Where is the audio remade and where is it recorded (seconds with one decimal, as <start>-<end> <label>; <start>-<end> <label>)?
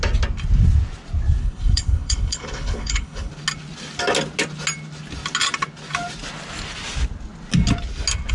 0.0-1.4 recorded; 1.4-3.3 remade; 3.3-8.3 recorded